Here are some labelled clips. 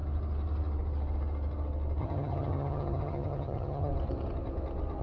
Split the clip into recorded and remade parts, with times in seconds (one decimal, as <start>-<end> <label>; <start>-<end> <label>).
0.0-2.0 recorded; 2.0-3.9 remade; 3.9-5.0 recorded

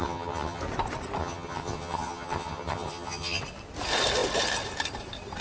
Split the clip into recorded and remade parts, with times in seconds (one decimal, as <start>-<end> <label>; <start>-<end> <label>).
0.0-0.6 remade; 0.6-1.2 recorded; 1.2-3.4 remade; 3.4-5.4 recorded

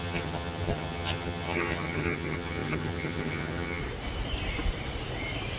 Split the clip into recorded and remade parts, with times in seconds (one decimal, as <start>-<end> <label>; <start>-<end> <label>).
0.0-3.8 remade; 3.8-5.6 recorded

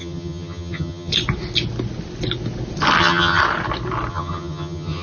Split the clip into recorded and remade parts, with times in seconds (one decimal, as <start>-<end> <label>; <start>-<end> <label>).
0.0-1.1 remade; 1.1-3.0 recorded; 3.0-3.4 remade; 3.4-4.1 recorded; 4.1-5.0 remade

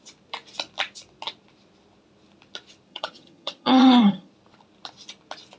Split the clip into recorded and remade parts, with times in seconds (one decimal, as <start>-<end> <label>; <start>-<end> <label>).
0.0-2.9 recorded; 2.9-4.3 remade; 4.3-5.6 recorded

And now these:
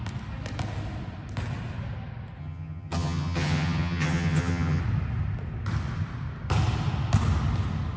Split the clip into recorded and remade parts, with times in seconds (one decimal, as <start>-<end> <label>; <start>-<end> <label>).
0.0-2.4 recorded; 2.4-4.8 remade; 4.8-8.0 recorded

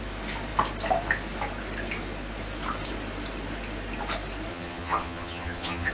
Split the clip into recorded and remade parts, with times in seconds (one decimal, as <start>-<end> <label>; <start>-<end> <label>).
0.0-4.5 recorded; 4.5-5.9 remade

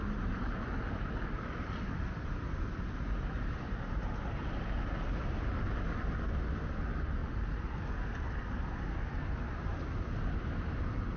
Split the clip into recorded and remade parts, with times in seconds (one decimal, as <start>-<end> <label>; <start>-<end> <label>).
0.0-11.2 recorded